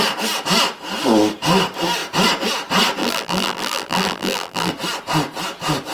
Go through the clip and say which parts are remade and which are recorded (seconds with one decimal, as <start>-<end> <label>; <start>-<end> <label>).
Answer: 0.0-3.0 recorded; 3.0-4.7 remade; 4.7-5.9 recorded